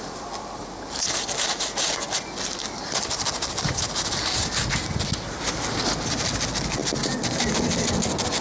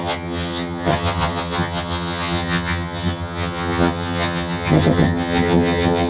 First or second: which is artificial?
second